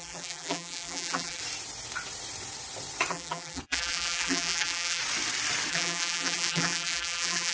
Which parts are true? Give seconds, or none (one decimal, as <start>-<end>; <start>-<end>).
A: 1.4-3.1; 5.0-5.7